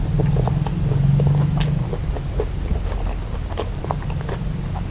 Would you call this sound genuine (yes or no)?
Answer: yes